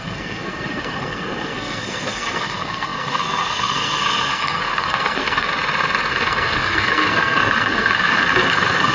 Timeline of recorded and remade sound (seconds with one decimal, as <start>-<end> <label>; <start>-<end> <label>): 0.0-5.5 remade; 5.5-6.1 recorded; 6.1-8.9 remade